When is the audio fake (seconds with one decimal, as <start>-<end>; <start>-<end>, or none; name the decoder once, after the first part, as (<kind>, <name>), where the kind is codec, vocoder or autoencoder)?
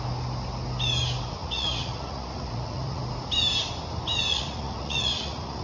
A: 1.4-3.0 (vocoder, Vocos); 4.3-5.6